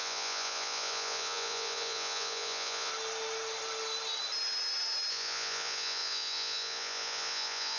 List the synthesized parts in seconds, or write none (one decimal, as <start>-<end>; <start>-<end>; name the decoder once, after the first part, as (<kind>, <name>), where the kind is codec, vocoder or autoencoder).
0.0-2.9 (vocoder, Vocos); 5.1-7.8